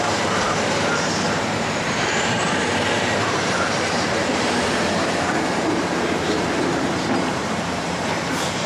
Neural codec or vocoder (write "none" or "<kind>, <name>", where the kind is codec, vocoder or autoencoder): vocoder, BigVGAN v2